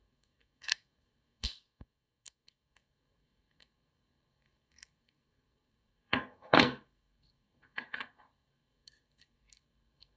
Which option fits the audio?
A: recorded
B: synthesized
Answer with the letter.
B